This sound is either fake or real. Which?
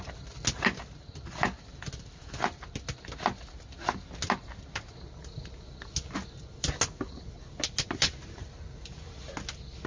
real